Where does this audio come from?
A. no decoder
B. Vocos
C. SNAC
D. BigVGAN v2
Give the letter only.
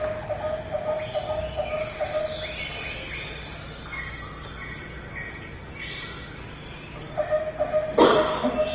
A